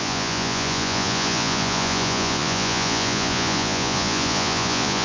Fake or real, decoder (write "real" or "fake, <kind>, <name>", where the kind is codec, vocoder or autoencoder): fake, vocoder, Vocos